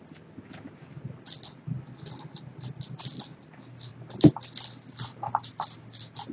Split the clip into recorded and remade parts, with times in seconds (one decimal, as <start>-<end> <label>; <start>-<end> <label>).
0.0-6.3 recorded